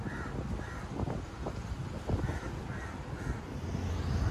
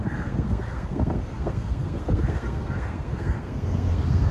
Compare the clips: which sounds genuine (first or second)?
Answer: first